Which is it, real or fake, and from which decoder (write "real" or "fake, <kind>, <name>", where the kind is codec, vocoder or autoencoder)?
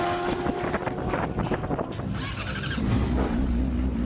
real